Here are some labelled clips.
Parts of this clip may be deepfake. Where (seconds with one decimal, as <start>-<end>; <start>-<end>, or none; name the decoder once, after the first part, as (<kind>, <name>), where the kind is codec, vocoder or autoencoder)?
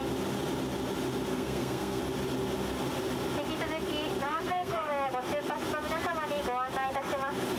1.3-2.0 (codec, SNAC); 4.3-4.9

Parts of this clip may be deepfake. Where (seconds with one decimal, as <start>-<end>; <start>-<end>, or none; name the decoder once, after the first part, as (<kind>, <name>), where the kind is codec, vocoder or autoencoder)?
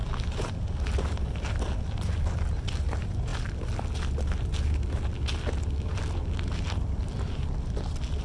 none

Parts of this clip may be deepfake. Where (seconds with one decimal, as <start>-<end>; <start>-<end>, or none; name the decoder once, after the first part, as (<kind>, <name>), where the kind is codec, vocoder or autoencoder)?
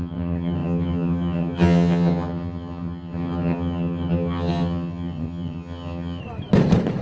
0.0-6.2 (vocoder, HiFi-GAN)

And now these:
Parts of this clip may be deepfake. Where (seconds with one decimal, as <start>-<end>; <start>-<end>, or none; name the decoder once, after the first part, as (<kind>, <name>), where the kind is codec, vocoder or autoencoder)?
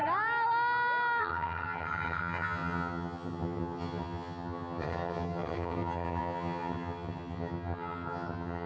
1.2-8.7 (vocoder, HiFi-GAN)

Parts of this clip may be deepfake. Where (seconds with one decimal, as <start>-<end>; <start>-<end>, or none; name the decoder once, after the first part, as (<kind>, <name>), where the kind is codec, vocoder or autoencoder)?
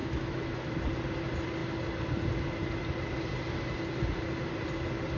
0.0-0.7 (autoencoder, DAC-VAE)